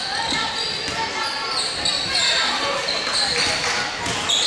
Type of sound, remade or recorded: recorded